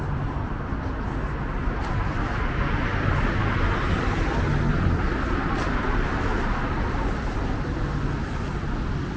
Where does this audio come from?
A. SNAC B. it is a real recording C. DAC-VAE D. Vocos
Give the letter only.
B